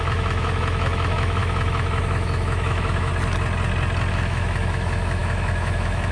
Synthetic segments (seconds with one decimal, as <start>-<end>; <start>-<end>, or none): 0.0-3.1; 4.1-6.1